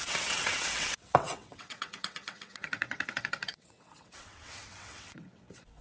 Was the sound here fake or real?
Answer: fake